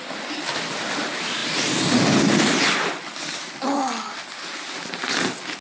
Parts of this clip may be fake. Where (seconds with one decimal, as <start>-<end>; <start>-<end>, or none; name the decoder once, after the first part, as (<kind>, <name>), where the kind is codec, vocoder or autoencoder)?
none